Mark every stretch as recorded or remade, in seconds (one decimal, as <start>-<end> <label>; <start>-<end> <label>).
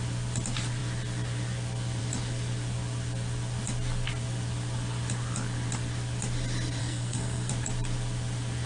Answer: 0.0-6.8 recorded; 6.8-7.5 remade; 7.5-8.7 recorded